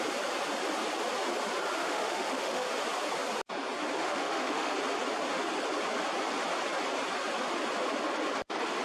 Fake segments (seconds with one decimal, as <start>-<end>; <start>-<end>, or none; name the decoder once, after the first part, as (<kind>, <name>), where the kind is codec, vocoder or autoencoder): 1.8-2.7 (autoencoder, DAC-VAE); 4.0-4.7